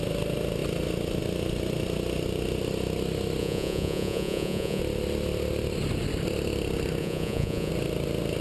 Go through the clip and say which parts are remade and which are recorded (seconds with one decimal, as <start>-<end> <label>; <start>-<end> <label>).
0.0-3.4 recorded; 3.4-4.8 remade; 4.8-7.0 recorded; 7.0-7.7 remade; 7.7-8.4 recorded